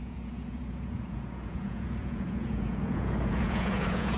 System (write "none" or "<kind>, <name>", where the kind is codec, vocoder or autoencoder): vocoder, Vocos